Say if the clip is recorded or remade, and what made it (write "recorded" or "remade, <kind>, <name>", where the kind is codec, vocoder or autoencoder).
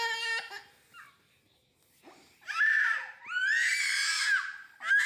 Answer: recorded